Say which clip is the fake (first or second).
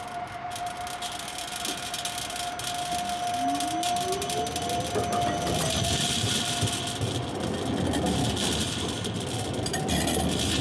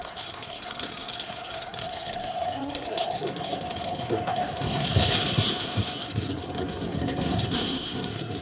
second